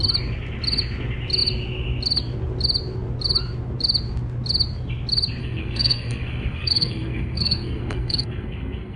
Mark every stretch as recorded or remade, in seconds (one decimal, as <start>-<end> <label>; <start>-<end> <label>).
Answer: 0.0-5.4 recorded; 5.4-9.0 remade